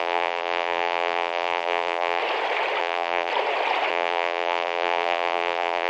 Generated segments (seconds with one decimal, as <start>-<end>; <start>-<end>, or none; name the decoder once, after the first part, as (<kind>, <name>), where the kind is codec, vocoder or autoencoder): 0.0-2.2 (vocoder, BigVGAN v2); 2.8-3.3; 3.9-5.9